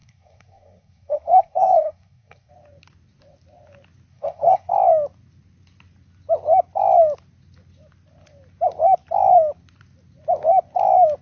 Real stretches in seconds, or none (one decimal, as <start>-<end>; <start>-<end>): 2.5-4.1; 4.7-11.2